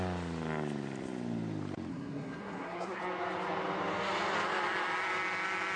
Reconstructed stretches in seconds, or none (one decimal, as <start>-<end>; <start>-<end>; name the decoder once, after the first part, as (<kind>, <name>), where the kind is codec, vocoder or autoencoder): 1.9-3.0 (codec, SNAC)

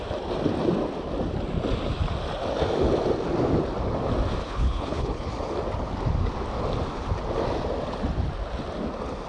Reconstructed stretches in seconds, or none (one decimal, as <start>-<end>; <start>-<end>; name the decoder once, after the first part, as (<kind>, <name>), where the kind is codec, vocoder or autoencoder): 4.4-5.3 (codec, HILCodec)

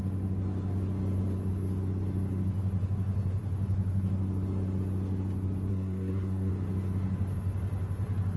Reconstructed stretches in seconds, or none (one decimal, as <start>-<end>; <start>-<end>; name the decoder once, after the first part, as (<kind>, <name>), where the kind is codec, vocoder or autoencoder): 5.7-6.5 (codec, SNAC)